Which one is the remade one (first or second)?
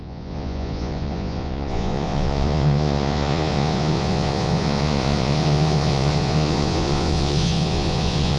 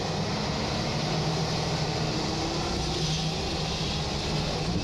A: first